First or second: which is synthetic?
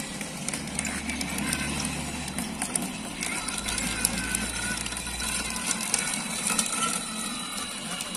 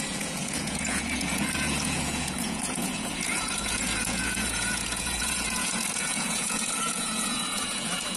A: second